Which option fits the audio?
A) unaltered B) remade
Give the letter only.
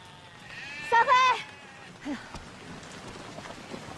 A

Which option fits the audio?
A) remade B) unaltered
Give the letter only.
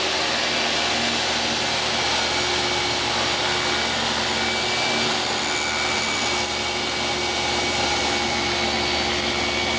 B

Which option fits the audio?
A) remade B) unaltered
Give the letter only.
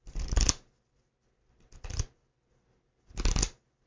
B